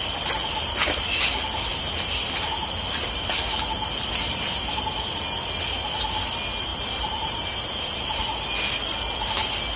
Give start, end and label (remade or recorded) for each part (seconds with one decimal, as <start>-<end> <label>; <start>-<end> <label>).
0.0-6.7 recorded; 6.7-8.0 remade; 8.0-9.8 recorded